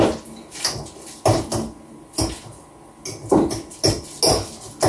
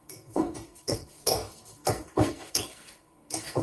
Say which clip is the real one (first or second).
first